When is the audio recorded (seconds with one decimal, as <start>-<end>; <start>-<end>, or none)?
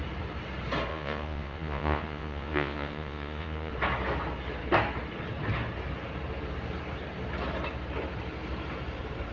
0.0-0.9; 3.7-9.3